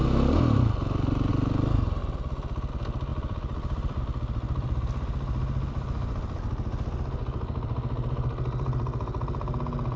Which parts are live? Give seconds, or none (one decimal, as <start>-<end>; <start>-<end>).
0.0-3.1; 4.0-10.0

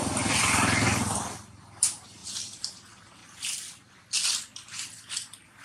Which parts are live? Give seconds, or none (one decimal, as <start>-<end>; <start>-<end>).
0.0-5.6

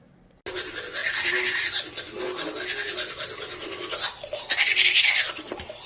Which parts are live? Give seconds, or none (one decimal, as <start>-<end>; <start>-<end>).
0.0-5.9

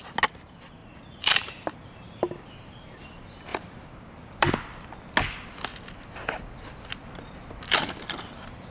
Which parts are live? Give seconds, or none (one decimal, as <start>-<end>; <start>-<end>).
0.0-0.8; 2.2-3.5; 4.5-8.7

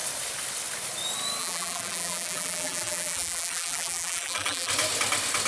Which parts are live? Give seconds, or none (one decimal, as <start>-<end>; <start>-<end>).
0.0-1.4; 4.7-5.5

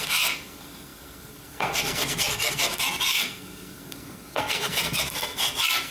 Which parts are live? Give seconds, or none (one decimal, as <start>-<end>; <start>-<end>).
none

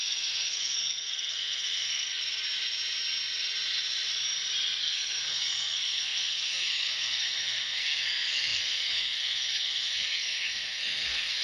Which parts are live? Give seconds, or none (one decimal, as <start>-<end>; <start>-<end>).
2.2-4.8